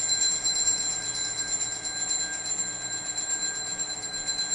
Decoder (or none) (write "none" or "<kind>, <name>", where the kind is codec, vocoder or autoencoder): none